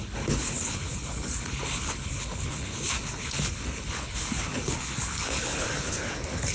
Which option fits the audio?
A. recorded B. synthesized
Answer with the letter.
B